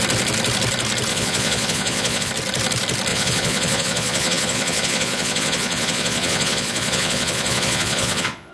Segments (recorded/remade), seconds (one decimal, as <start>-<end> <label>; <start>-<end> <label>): 0.0-1.1 recorded; 1.1-2.3 remade; 2.3-3.1 recorded; 3.1-8.5 remade